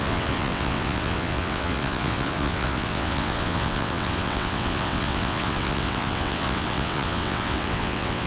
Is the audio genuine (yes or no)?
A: no